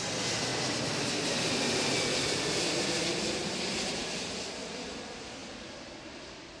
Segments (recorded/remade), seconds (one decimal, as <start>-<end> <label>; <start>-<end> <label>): 0.0-4.0 recorded; 4.0-5.0 remade; 5.0-5.4 recorded; 5.4-6.6 remade